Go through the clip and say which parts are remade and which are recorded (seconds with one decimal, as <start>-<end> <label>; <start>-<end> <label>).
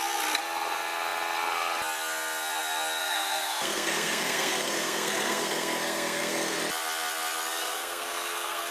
0.0-3.0 recorded; 3.0-6.6 remade; 6.6-7.6 recorded; 7.6-8.7 remade